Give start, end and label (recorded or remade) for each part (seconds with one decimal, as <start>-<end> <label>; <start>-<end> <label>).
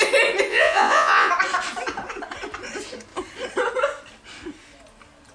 0.0-0.5 recorded; 0.5-1.3 remade; 1.3-5.3 recorded